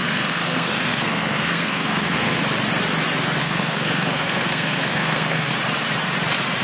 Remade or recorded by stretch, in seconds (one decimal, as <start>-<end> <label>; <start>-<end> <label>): 0.0-2.4 remade; 2.4-3.4 recorded; 3.4-5.5 remade; 5.5-6.6 recorded